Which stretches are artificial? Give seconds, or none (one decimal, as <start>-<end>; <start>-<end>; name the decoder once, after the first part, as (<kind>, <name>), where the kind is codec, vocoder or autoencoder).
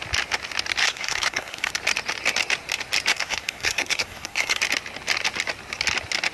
0.8-1.7 (codec, SNAC); 3.1-4.6